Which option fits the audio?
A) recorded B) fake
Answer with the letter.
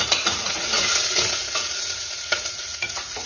B